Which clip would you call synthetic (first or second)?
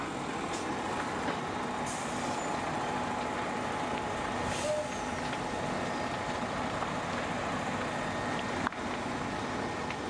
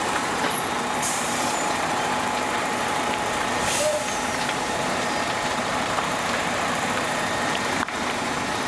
second